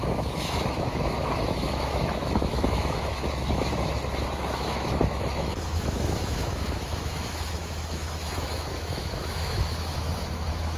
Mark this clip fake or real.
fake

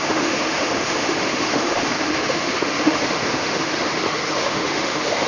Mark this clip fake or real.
fake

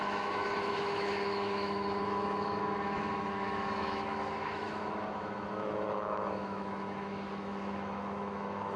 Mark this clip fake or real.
fake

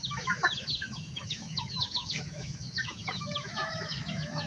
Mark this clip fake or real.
fake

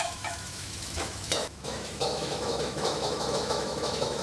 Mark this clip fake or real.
fake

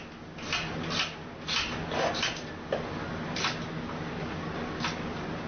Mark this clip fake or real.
real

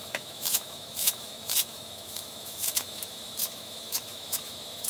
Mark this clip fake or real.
fake